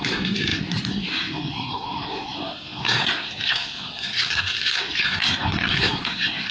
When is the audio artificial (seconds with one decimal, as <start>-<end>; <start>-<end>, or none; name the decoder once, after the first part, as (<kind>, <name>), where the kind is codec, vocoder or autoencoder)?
0.0-6.5 (codec, SNAC)